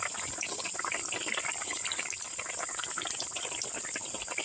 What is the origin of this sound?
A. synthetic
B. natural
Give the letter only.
B